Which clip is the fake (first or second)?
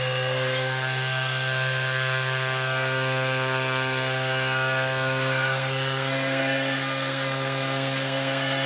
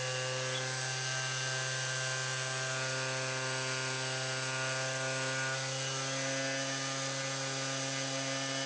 first